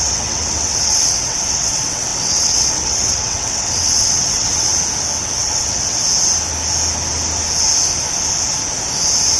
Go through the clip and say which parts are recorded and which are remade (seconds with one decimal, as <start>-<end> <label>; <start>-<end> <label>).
0.0-4.7 remade; 4.7-5.2 recorded; 5.2-6.0 remade; 6.0-9.4 recorded